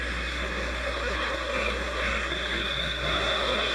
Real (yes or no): no